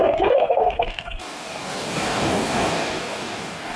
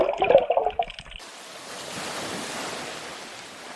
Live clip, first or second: second